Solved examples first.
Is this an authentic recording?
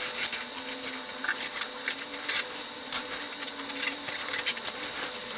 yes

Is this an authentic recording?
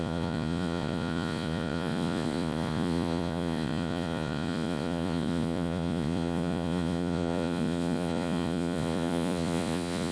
no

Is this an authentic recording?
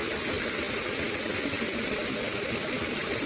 yes